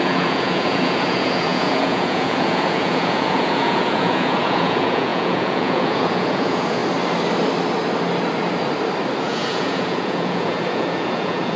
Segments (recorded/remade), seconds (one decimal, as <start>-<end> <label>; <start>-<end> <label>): 0.0-6.8 remade; 6.8-9.2 recorded; 9.2-11.6 remade

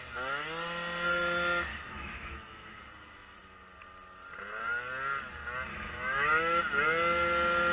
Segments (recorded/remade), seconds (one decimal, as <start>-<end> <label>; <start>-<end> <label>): 0.0-1.7 recorded; 1.7-2.8 remade; 2.8-5.7 recorded; 5.7-6.6 remade; 6.6-7.7 recorded

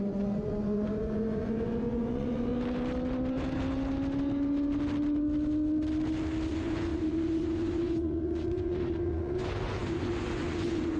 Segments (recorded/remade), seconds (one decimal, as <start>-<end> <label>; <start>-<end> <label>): 0.0-2.5 remade; 2.5-6.5 recorded; 6.5-11.0 remade

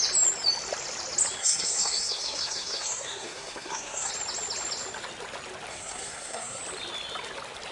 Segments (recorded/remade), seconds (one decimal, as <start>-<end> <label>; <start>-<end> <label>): 0.0-1.4 recorded; 1.4-4.1 remade; 4.1-5.7 recorded; 5.7-6.6 remade; 6.6-7.7 recorded

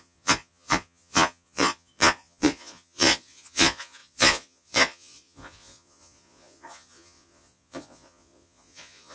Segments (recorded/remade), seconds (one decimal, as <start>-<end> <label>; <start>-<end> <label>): 0.0-9.1 remade

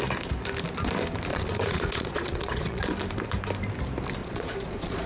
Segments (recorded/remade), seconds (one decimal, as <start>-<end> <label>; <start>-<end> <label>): 0.0-1.3 recorded; 1.3-2.8 remade; 2.8-4.2 recorded; 4.2-5.1 remade